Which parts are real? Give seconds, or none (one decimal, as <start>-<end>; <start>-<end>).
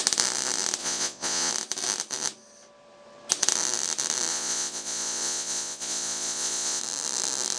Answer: 0.0-0.8; 1.5-4.3; 6.8-7.6